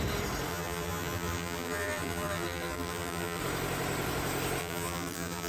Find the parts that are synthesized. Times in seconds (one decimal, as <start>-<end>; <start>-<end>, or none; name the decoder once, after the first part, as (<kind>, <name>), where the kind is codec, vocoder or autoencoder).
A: 0.5-3.4 (vocoder, BigVGAN v2); 4.6-5.5